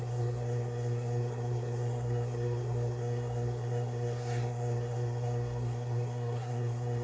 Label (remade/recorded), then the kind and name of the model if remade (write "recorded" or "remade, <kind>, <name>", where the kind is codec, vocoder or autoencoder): remade, codec, SNAC